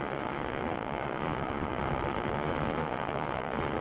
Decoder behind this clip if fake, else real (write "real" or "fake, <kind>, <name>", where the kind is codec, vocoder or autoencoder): fake, vocoder, Vocos